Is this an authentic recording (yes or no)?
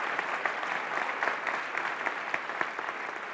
yes